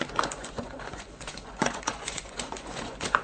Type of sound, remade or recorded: remade